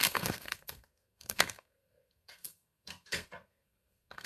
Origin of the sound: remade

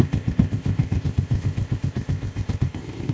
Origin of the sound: remade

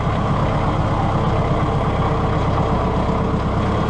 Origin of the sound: recorded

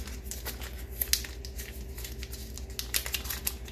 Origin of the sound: recorded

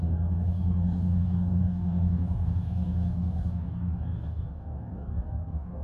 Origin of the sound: remade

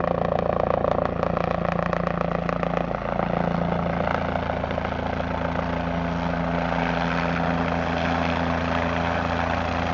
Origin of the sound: recorded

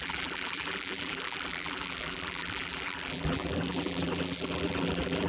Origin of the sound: remade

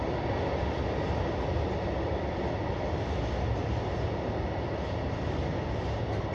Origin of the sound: recorded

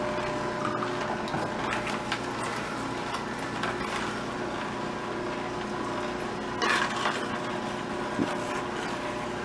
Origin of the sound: recorded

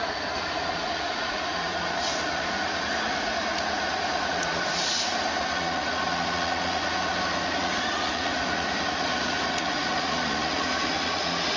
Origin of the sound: remade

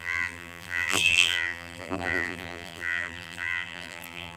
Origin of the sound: remade